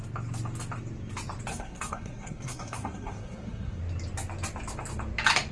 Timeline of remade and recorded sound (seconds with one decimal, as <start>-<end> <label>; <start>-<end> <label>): 0.0-1.5 recorded; 1.5-3.8 remade; 3.8-5.5 recorded